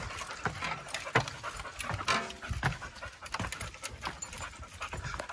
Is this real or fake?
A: real